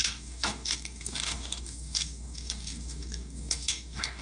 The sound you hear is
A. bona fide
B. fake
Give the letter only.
B